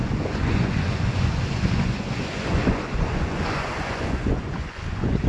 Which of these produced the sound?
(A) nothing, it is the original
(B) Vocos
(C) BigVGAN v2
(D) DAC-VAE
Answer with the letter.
B